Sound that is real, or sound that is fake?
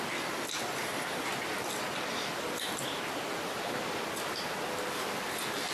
real